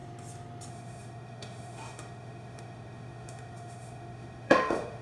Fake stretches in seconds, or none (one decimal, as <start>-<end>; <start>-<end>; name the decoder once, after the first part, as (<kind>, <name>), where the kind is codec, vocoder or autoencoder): 0.7-5.0 (autoencoder, DAC-VAE)